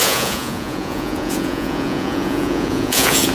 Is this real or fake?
fake